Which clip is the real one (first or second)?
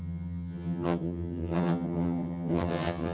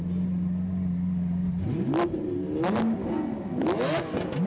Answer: second